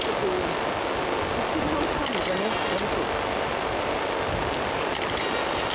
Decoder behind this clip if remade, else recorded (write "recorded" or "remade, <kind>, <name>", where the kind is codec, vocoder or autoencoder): recorded